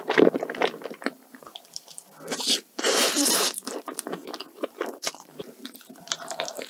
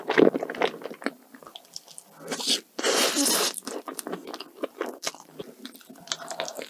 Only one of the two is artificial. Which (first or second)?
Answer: first